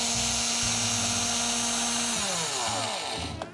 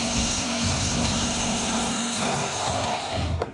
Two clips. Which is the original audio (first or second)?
first